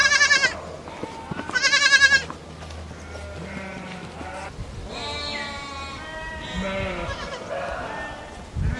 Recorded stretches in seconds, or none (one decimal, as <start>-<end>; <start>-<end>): 0.0-8.8